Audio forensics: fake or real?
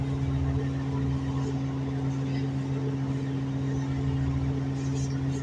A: real